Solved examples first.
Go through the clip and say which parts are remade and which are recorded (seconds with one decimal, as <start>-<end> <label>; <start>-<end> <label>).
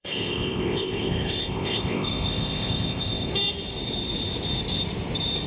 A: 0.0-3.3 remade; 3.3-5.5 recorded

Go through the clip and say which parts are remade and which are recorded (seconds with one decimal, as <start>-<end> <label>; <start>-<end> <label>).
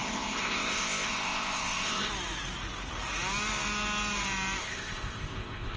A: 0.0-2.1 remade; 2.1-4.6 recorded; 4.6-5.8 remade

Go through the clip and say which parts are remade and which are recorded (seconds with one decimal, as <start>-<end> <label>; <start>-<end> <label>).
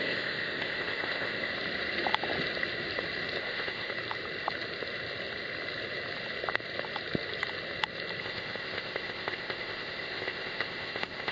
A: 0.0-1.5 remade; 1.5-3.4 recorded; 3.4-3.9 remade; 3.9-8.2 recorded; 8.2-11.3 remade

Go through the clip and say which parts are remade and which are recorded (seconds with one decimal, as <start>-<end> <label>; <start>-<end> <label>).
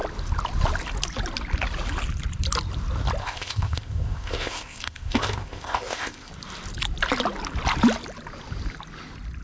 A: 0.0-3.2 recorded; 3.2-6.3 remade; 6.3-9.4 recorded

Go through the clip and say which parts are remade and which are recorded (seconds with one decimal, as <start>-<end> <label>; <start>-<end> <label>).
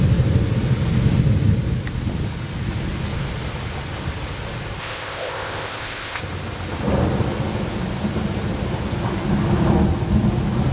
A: 0.0-4.8 recorded; 4.8-6.2 remade; 6.2-10.7 recorded